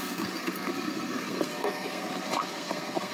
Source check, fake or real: fake